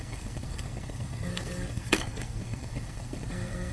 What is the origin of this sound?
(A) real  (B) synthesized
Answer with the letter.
B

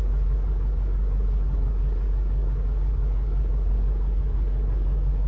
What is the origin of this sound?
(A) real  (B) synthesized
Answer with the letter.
B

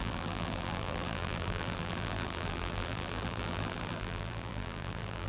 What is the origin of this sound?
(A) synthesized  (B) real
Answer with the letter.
A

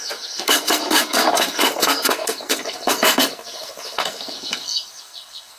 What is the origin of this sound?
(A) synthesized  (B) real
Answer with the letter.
A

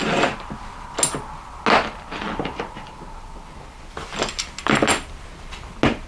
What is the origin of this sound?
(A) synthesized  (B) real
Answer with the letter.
B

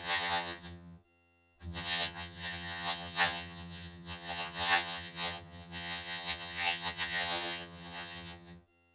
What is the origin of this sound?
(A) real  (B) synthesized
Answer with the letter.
B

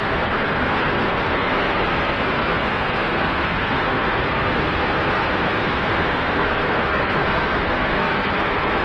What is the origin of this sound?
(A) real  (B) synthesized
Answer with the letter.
B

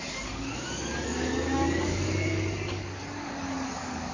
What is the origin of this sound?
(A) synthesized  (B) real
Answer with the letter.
A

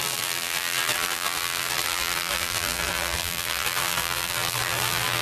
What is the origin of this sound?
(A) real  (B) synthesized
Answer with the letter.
B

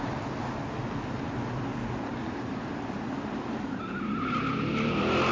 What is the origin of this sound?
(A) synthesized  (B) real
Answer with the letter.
B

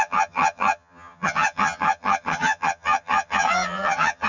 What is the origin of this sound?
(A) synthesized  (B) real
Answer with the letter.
A